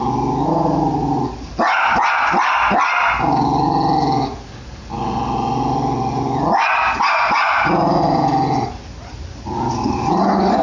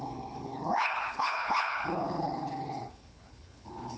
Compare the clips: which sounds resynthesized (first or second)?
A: second